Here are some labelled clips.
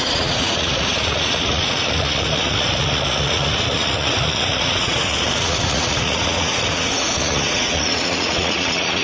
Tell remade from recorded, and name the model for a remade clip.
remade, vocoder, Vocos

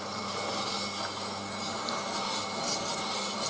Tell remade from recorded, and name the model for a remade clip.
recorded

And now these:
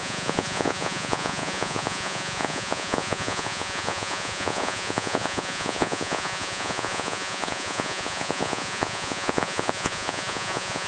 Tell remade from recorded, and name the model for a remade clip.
remade, vocoder, Vocos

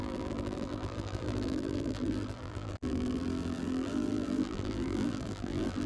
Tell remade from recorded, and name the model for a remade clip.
remade, vocoder, BigVGAN v2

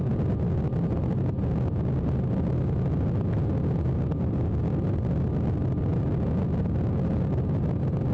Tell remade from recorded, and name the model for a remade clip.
recorded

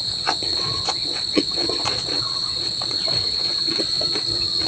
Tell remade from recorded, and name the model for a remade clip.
remade, vocoder, Vocos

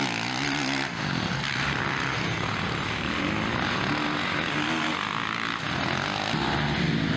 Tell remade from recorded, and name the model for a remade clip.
recorded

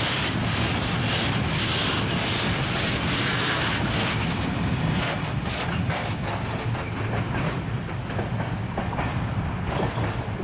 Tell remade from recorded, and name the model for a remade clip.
recorded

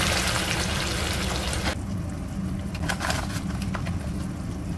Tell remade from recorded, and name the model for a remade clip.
recorded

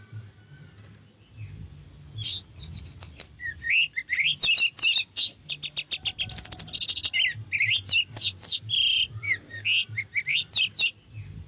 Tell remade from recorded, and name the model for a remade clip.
recorded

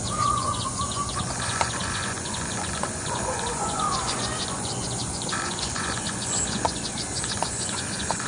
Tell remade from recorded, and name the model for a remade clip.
remade, vocoder, Vocos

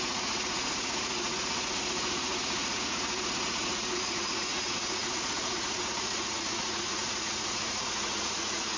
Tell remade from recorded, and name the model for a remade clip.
remade, vocoder, Vocos